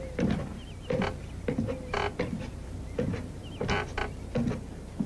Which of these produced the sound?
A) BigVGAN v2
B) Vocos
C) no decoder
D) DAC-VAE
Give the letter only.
C